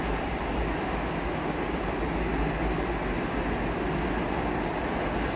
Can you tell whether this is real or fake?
real